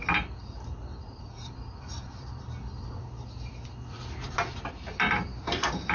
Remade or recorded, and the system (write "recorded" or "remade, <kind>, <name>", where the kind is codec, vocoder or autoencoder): remade, vocoder, BigVGAN v2